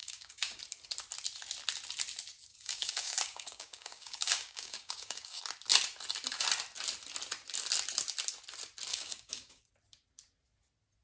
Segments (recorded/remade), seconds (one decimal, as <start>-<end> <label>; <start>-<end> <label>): 0.0-0.6 remade; 0.6-2.5 recorded; 2.5-5.4 remade; 5.4-8.9 recorded; 8.9-9.6 remade; 9.6-11.0 recorded